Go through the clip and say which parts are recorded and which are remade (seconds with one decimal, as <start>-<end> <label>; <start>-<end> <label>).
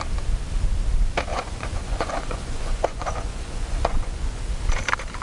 0.0-1.3 recorded; 1.3-4.4 remade; 4.4-5.2 recorded